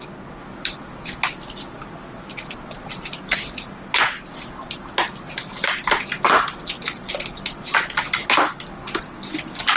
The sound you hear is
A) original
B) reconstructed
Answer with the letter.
A